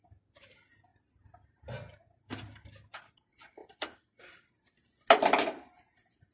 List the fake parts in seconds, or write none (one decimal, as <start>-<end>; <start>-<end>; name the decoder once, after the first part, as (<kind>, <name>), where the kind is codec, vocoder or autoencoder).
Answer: 3.6-4.5 (vocoder, BigVGAN v2)